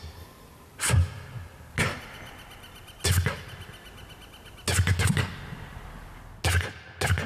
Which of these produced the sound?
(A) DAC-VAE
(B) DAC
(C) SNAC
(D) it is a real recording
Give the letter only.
D